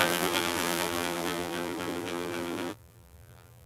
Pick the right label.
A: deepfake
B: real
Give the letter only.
A